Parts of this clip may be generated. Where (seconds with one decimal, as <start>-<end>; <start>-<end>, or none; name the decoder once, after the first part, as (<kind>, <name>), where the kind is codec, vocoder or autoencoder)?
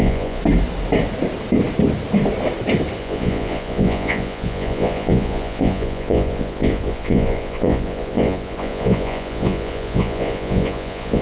0.0-0.4 (vocoder, Vocos); 3.0-11.2